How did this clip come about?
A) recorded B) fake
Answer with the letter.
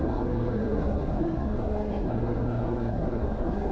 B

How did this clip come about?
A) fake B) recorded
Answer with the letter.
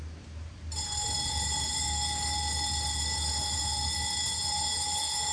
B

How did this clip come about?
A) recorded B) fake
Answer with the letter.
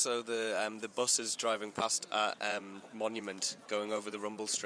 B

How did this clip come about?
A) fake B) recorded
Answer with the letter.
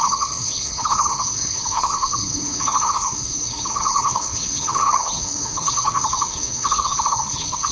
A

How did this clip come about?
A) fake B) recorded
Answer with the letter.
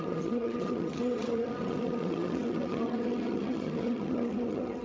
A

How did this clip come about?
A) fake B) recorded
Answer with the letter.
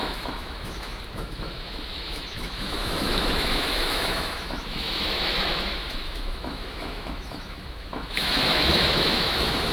A